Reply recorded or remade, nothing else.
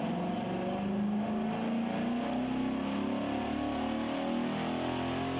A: recorded